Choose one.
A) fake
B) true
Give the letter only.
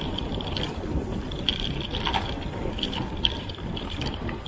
A